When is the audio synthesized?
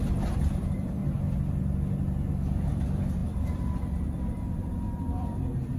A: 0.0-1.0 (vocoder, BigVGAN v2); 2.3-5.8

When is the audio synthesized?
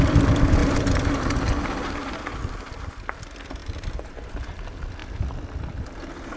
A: 3.6-4.3 (vocoder, BigVGAN v2)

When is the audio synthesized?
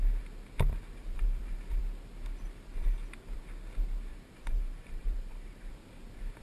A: 1.0-1.8 (vocoder, BigVGAN v2); 4.1-5.7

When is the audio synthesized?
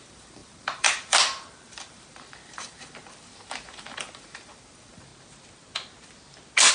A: 0.0-5.1 (vocoder, BigVGAN v2)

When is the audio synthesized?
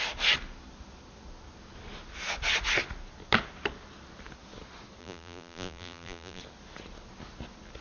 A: 5.0-6.4 (vocoder, BigVGAN v2)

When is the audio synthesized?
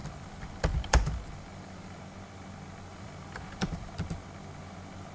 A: 0.0-2.0 (vocoder, BigVGAN v2); 2.9-3.9